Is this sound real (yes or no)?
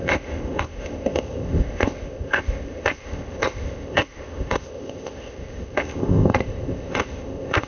no